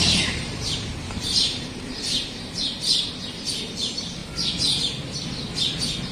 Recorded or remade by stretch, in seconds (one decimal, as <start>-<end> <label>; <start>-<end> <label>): 0.0-4.2 remade; 4.2-6.1 recorded